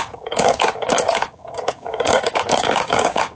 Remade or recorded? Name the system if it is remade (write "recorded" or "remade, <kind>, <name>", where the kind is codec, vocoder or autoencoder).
remade, codec, DAC